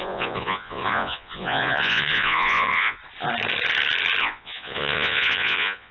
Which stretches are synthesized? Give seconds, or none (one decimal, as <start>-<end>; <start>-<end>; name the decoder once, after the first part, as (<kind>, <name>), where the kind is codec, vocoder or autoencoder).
0.0-3.0 (vocoder, Vocos); 4.2-5.9